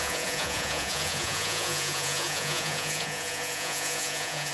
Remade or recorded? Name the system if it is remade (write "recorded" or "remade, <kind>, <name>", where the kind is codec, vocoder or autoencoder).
remade, vocoder, Vocos